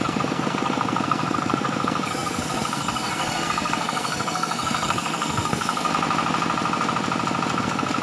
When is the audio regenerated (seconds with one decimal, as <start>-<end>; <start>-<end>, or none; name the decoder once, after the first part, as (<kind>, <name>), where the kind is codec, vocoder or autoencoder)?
0.0-5.9 (codec, SNAC); 7.6-8.0